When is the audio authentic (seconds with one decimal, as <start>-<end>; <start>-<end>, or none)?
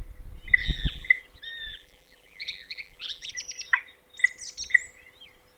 0.0-0.6; 1.2-1.7; 3.3-5.6